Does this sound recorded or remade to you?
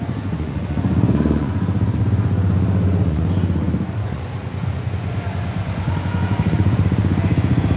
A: remade